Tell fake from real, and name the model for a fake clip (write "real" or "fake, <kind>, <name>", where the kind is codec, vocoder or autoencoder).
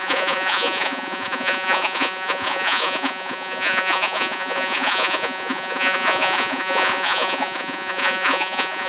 fake, vocoder, Vocos